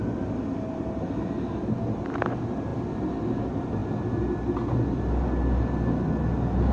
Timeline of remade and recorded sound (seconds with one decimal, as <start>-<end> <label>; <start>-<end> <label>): 0.0-6.7 recorded